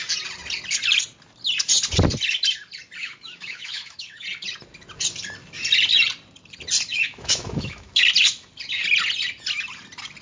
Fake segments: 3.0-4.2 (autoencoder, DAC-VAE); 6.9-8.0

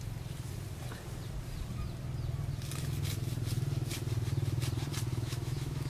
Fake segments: 5.1-5.9 (autoencoder, DAC-VAE)

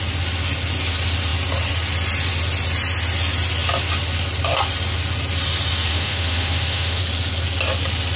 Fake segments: 5.9-7.0 (autoencoder, DAC-VAE)

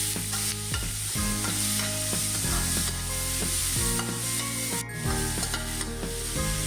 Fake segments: none

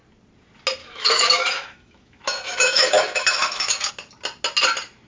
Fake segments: 0.8-3.9 (autoencoder, DAC-VAE)

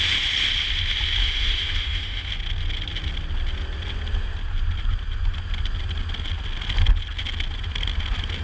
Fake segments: 1.2-2.3 (autoencoder, DAC-VAE)